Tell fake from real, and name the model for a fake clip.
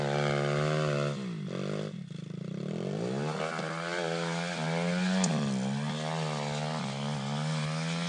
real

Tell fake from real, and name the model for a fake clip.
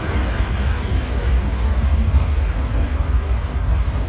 fake, codec, DAC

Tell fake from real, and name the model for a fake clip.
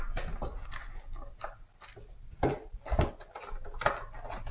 real